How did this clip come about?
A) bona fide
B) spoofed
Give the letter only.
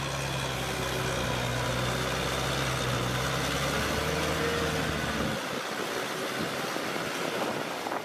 A